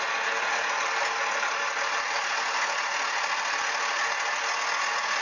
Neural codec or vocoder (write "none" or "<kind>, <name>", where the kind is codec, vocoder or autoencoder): none